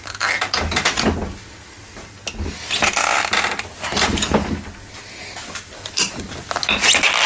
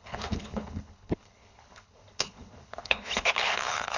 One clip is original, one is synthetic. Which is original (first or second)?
first